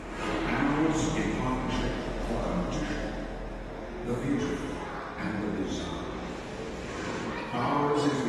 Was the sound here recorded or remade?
recorded